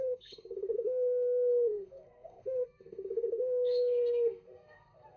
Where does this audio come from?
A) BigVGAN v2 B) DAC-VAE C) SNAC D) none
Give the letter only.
C